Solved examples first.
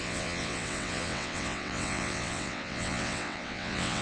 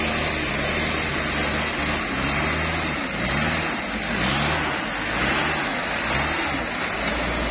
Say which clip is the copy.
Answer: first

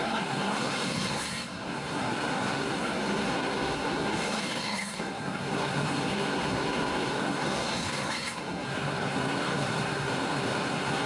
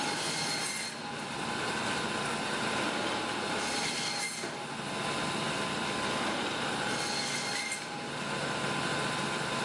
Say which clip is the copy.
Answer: first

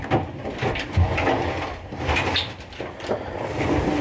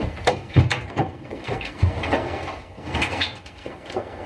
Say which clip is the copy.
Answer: second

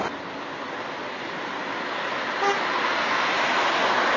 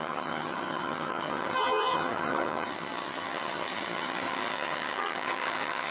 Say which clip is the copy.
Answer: second